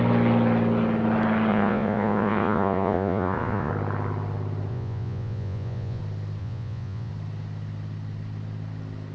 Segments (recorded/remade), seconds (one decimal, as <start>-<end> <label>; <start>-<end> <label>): 0.0-1.5 recorded; 1.5-3.7 remade; 3.7-4.7 recorded; 4.7-6.0 remade; 6.0-6.4 recorded; 6.4-7.1 remade; 7.1-9.1 recorded